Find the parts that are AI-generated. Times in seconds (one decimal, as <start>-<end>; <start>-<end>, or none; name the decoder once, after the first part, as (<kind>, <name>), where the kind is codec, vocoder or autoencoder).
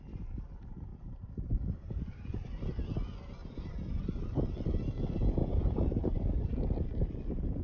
0.9-2.3 (vocoder, BigVGAN v2); 3.4-4.3; 5.4-6.4